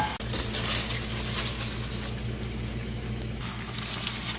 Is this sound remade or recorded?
recorded